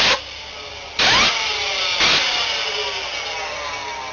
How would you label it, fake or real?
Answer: real